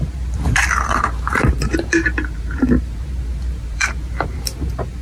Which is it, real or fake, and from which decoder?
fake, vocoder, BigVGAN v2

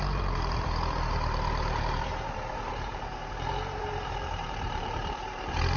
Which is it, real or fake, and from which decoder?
fake, vocoder, BigVGAN v2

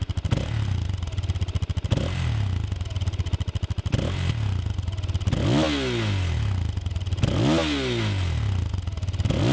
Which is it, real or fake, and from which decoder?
real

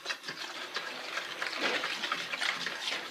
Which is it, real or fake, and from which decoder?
real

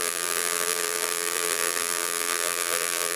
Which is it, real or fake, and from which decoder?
fake, vocoder, BigVGAN v2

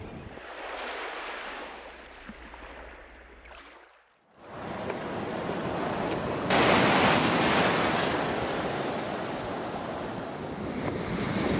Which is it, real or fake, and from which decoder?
real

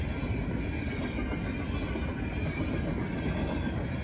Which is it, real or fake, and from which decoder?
real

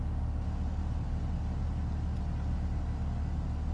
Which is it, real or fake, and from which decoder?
real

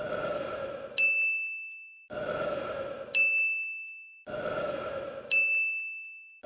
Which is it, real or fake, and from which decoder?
real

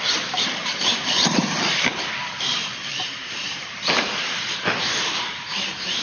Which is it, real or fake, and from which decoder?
fake, vocoder, BigVGAN v2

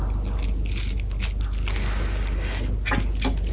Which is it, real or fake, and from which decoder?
real